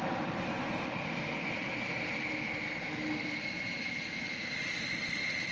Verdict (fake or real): real